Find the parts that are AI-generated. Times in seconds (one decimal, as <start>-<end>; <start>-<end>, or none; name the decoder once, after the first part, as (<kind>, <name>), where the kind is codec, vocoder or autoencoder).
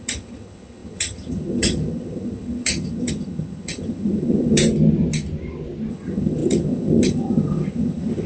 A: 0.0-4.6 (vocoder, HiFi-GAN); 5.9-8.3